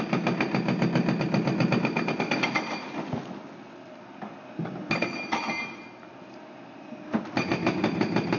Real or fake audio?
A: real